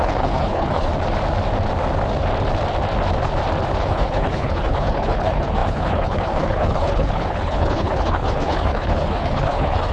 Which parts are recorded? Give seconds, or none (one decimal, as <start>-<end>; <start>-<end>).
0.9-3.8